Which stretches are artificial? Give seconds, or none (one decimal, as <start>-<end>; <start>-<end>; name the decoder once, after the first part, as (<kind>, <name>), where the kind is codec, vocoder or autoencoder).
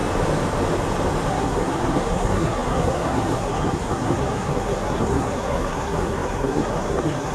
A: 1.3-7.3 (codec, SNAC)